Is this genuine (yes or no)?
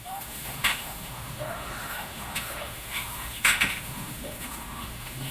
no